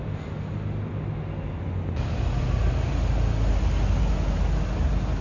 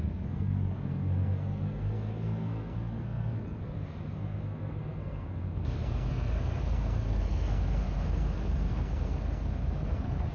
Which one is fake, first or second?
second